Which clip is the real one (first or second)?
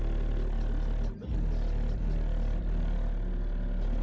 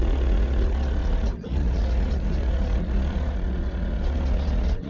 first